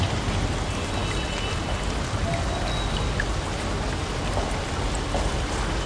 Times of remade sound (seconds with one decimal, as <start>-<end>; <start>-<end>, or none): none